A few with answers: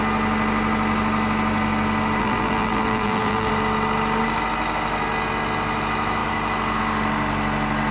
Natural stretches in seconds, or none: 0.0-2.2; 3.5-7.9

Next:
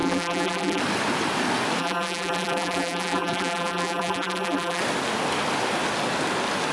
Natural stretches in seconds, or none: 0.8-1.8; 4.8-6.7

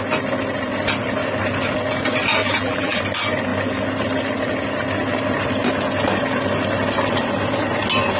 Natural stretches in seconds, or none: 0.0-2.4; 3.0-8.2

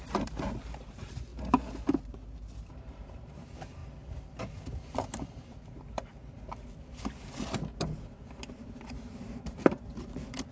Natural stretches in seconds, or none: 1.3-2.7; 3.8-4.8; 6.1-8.5